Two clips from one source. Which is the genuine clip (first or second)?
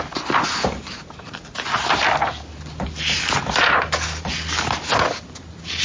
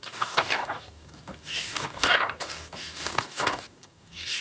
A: first